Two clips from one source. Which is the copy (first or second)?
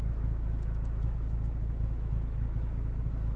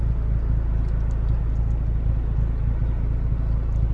first